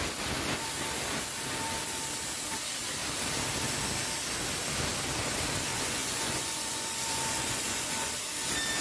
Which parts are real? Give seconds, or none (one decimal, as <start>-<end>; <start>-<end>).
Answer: 0.0-5.7; 8.1-8.8